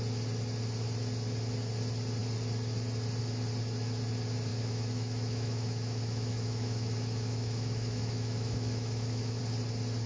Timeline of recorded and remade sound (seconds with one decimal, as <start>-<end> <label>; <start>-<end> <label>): 0.0-4.5 recorded; 4.5-9.4 remade; 9.4-10.1 recorded